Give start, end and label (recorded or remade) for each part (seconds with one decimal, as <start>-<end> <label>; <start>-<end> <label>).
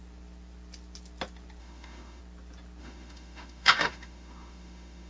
0.0-1.6 recorded; 1.6-2.2 remade; 2.2-2.8 recorded; 2.8-5.1 remade